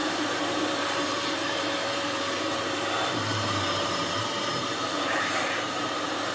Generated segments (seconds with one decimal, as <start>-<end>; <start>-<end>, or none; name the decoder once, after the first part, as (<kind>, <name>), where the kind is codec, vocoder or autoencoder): 0.0-6.3 (vocoder, BigVGAN v2)